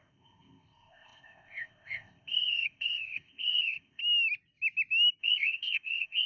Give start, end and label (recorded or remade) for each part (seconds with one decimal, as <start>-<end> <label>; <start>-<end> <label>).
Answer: 0.0-4.0 remade; 4.0-5.2 recorded; 5.2-6.3 remade